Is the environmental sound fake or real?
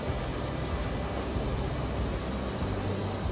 real